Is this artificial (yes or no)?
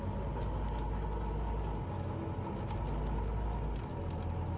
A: no